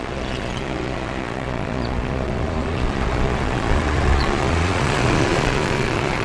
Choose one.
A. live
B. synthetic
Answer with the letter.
B